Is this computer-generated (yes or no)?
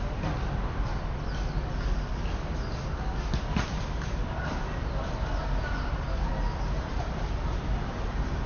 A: no